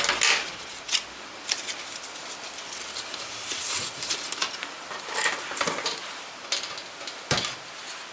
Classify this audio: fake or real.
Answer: real